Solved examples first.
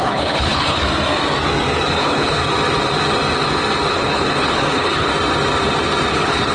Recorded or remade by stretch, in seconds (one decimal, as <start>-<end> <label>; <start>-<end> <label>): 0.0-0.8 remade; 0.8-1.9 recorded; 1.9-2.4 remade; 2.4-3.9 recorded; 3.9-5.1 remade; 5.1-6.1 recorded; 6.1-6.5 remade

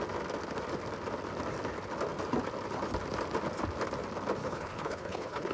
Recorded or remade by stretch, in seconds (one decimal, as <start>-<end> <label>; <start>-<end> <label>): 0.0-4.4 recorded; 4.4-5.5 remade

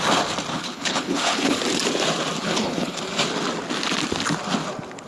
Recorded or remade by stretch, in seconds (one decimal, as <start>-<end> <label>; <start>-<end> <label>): 0.0-0.5 recorded; 0.5-1.6 remade; 1.6-2.4 recorded; 2.4-3.0 remade; 3.0-5.1 recorded